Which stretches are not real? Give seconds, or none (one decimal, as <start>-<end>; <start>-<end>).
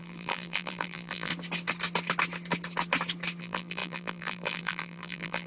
0.0-1.3; 3.4-5.5